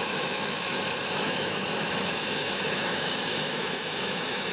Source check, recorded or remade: remade